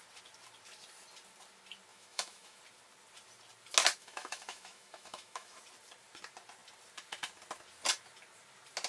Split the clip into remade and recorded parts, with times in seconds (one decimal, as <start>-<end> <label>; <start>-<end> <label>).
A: 0.0-1.9 recorded; 1.9-2.6 remade; 2.6-4.0 recorded; 4.0-5.6 remade; 5.6-8.9 recorded